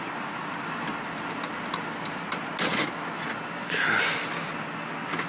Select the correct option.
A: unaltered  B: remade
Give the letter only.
A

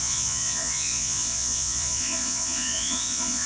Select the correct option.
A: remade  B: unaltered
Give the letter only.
A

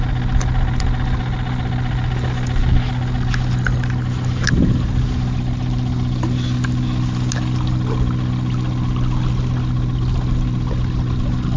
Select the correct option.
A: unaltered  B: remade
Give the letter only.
A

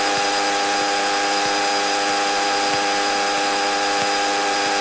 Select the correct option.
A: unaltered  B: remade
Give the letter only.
A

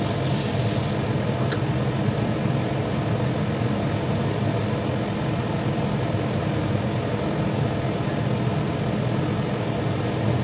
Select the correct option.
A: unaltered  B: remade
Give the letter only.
A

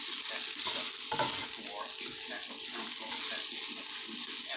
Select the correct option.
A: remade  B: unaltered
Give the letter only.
B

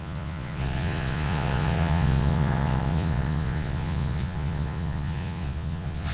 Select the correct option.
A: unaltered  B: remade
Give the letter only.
B